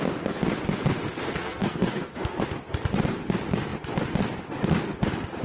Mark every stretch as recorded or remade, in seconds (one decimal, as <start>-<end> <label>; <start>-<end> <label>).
0.0-1.4 recorded; 1.4-2.4 remade; 2.4-5.4 recorded